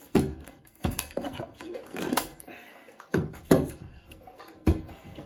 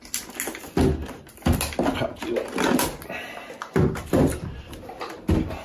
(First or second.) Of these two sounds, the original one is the second